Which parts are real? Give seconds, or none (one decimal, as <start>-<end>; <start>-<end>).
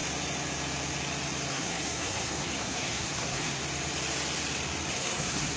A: 0.0-1.5; 3.6-4.9